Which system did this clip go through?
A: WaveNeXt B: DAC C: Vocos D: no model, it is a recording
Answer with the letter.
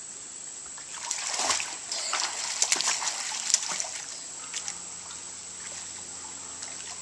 D